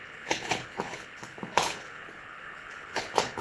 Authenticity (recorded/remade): remade